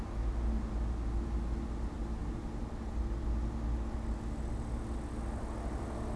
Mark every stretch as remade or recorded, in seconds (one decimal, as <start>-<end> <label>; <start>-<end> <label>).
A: 0.0-6.2 recorded